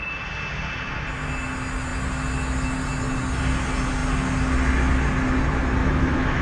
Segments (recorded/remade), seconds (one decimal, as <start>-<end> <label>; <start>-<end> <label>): 0.0-5.8 recorded; 5.8-6.4 remade